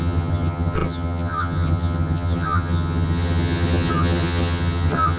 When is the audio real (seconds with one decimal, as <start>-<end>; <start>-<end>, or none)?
none